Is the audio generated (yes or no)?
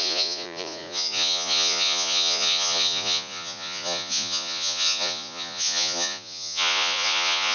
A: yes